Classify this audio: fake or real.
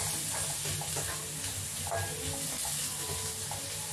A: real